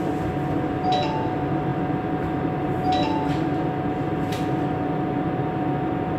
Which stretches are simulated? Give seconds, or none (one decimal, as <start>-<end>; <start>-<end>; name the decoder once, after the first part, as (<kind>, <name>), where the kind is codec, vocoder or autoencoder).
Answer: none